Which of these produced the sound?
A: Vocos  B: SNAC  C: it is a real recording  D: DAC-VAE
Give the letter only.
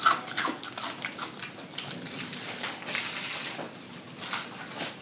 C